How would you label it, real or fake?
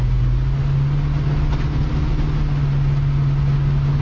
real